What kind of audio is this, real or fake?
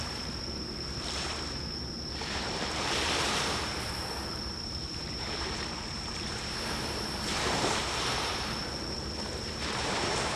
fake